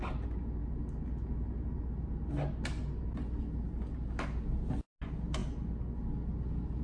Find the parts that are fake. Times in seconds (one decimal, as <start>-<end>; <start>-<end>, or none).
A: none

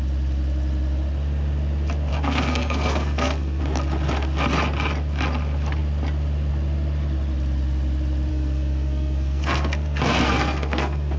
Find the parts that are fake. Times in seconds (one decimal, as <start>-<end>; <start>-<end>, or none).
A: 2.1-3.6; 8.3-11.2

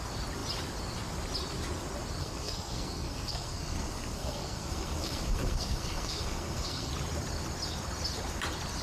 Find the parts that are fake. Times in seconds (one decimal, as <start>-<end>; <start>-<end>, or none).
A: 2.2-6.9

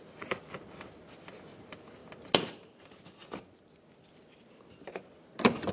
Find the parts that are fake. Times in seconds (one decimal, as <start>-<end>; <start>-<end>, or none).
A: none

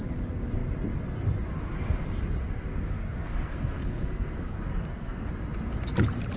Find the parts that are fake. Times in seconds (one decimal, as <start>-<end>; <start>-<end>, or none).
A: 2.4-5.3

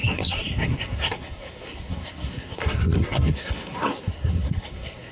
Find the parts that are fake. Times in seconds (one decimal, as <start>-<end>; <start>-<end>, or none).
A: 0.0-5.1